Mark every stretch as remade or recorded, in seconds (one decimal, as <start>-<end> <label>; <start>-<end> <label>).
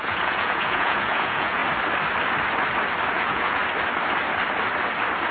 0.0-1.6 remade; 1.6-3.1 recorded; 3.1-3.6 remade; 3.6-5.3 recorded